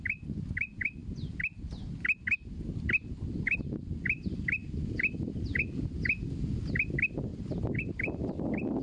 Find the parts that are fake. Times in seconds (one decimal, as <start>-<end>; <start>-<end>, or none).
1.0-1.9; 4.6-5.6; 7.3-7.9